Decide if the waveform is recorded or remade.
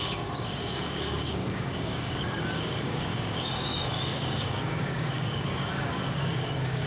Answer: remade